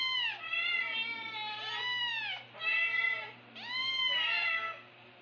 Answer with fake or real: real